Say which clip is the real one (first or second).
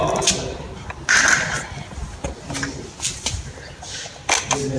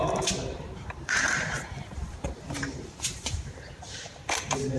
first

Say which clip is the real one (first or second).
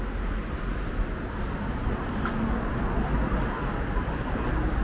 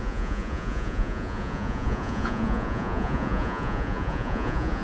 first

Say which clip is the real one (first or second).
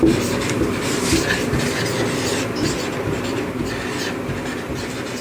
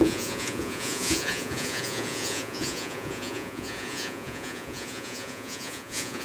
first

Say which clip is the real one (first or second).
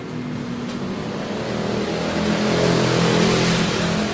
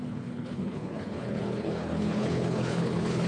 first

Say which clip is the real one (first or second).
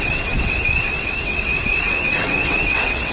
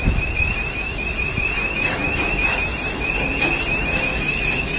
second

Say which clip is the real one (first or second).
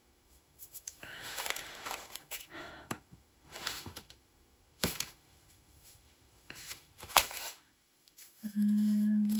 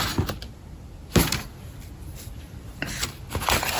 second